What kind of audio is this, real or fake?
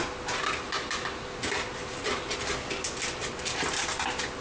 real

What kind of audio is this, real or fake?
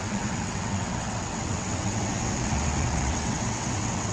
fake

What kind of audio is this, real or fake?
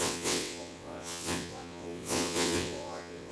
fake